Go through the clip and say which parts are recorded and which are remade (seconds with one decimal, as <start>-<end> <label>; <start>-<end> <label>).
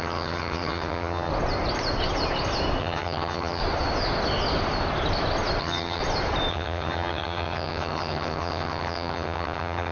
0.0-1.3 remade; 1.3-2.8 recorded; 2.8-3.6 remade; 3.6-5.6 recorded; 5.6-6.0 remade; 6.0-6.5 recorded; 6.5-9.9 remade